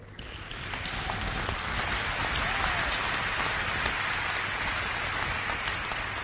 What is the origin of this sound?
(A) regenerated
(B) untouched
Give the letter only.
B